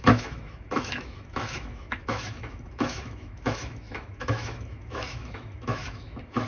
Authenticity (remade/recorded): remade